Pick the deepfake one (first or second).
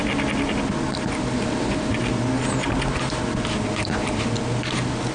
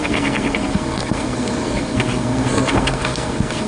second